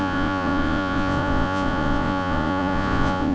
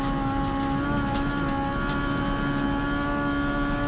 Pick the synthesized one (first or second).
first